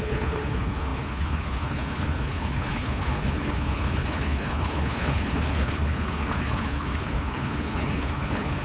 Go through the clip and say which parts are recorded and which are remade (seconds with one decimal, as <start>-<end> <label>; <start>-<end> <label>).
0.0-8.6 remade